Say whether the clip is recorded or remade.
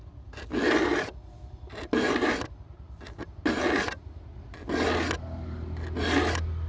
recorded